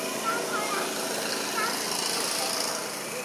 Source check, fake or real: real